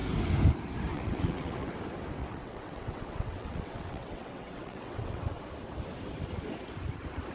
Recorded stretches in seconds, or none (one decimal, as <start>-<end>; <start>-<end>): 0.0-0.9; 1.7-2.2; 5.4-7.3